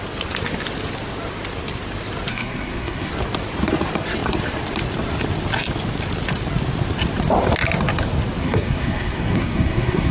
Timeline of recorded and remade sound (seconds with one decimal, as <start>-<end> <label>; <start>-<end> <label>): 0.0-2.3 recorded; 2.3-3.1 remade; 3.1-8.4 recorded; 8.4-10.1 remade